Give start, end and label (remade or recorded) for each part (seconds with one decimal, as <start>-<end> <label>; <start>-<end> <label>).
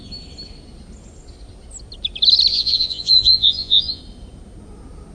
0.0-2.5 recorded; 2.5-4.0 remade; 4.0-5.1 recorded